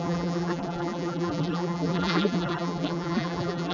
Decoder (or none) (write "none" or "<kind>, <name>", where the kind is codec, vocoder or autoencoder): vocoder, BigVGAN v2